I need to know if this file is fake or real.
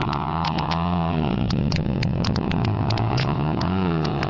fake